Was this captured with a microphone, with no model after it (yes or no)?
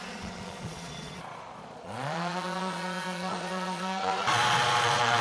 no